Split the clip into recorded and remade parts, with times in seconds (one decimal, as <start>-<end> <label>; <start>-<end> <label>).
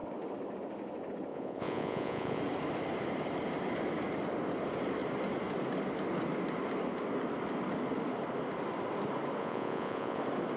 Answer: 0.0-1.3 recorded; 1.3-2.4 remade; 2.4-9.4 recorded; 9.4-10.2 remade; 10.2-10.6 recorded